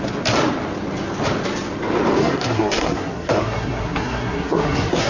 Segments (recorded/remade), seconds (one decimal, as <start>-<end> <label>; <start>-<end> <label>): 0.0-2.2 recorded; 2.2-5.1 remade